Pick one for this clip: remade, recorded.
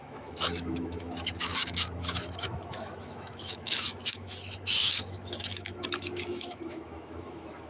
remade